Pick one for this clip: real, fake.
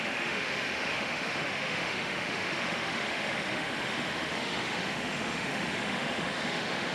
fake